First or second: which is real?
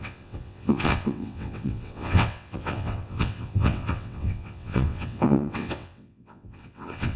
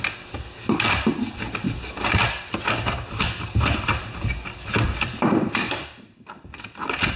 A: second